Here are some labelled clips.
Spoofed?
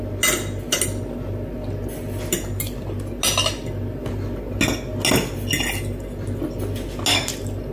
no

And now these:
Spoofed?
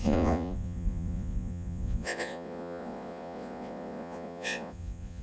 yes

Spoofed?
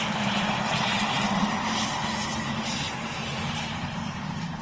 no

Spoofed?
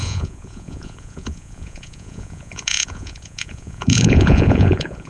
yes